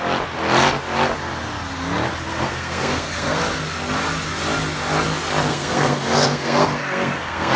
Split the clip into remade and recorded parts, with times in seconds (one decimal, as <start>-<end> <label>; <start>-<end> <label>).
0.0-2.3 recorded; 2.3-3.4 remade; 3.4-5.5 recorded; 5.5-7.6 remade